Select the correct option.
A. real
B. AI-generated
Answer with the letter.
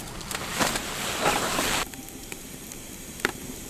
B